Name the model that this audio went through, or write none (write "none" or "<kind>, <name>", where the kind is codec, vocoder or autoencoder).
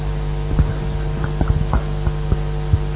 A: none